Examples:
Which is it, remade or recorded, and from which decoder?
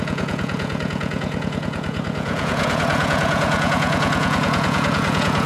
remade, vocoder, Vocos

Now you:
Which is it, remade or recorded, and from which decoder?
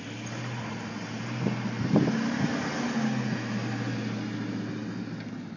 recorded